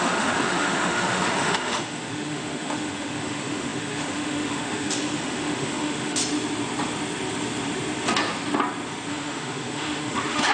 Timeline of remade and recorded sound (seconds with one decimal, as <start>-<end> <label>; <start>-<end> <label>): 0.0-6.2 remade; 6.2-9.1 recorded; 9.1-10.5 remade